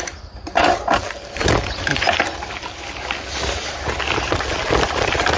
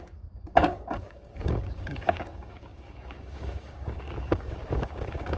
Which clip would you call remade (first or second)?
second